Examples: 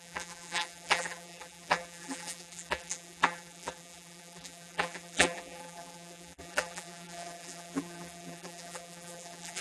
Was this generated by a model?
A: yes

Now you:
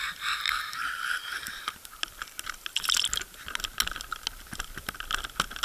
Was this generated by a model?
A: no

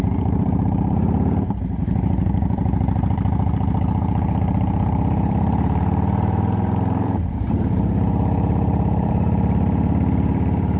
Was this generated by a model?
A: yes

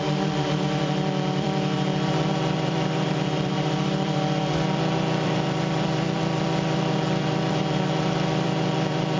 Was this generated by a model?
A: yes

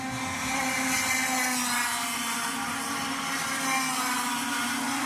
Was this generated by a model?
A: no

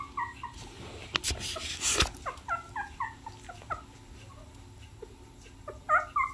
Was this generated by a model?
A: no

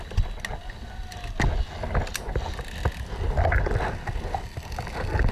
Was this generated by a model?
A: no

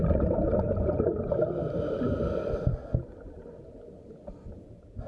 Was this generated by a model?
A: no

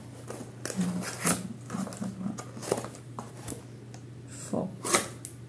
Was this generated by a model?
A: no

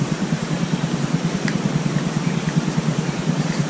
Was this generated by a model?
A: yes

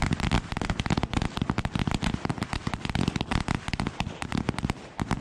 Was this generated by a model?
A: yes